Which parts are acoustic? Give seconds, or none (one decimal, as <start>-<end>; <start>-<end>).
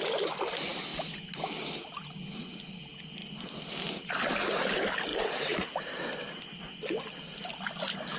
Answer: 0.0-5.1; 6.6-8.2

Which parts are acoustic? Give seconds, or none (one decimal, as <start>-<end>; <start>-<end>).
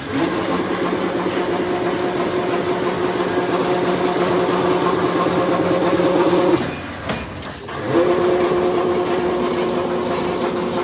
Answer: 0.0-3.6; 4.3-10.8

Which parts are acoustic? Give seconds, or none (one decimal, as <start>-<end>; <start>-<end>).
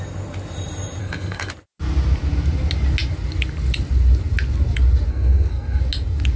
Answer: 0.0-1.0; 1.5-5.1; 5.8-6.4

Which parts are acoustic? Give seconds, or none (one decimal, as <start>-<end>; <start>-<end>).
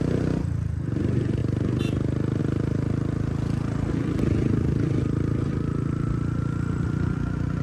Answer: 0.0-7.6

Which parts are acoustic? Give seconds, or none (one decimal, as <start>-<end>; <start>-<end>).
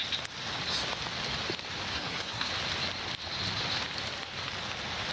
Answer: 0.0-1.9; 2.5-5.1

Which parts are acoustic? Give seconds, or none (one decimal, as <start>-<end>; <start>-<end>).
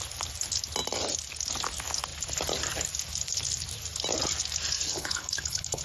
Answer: 0.0-4.9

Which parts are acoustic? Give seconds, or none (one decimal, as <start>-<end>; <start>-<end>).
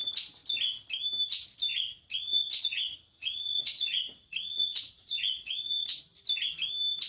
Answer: 0.0-1.7; 6.0-7.1